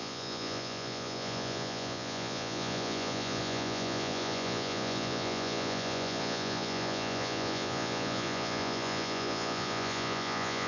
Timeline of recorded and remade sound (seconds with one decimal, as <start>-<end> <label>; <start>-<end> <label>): 0.0-10.7 remade